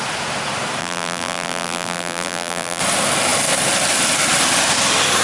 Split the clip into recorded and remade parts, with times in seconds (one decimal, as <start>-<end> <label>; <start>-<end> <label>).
0.0-0.8 recorded; 0.8-2.8 remade; 2.8-5.2 recorded